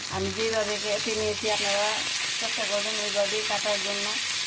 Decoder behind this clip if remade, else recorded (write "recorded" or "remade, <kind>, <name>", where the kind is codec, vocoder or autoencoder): recorded